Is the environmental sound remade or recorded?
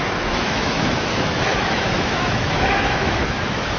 remade